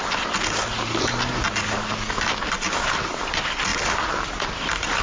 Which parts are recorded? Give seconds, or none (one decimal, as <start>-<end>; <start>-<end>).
0.0-5.0